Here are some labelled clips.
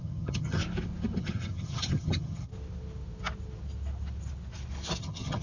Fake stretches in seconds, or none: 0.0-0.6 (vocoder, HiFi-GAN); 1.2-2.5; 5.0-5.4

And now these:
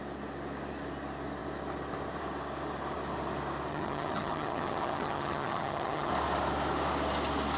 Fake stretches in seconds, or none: 3.7-6.1 (vocoder, HiFi-GAN)

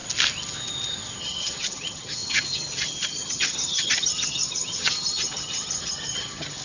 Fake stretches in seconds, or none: 1.2-6.6 (vocoder, HiFi-GAN)

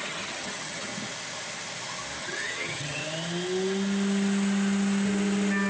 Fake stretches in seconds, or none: 0.0-0.9 (vocoder, HiFi-GAN); 2.2-3.0

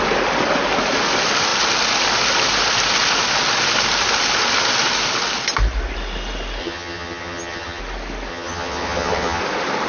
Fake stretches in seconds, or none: 6.6-7.8 (vocoder, HiFi-GAN); 8.3-9.4

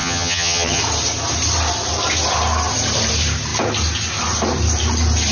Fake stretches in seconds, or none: 0.0-0.8 (vocoder, HiFi-GAN)